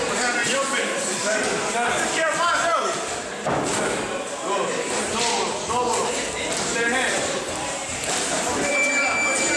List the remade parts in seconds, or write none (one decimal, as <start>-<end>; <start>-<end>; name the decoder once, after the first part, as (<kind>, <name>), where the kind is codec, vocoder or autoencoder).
0.4-1.7 (vocoder, BigVGAN v2); 6.0-8.7